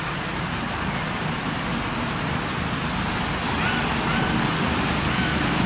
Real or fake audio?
real